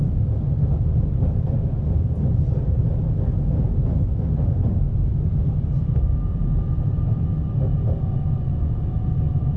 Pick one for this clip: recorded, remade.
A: recorded